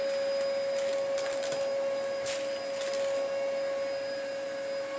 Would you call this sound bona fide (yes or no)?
yes